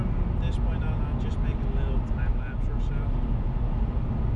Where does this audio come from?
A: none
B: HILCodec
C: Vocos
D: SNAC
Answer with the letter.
A